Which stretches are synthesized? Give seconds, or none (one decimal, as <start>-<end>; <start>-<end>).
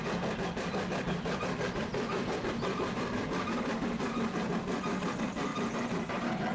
none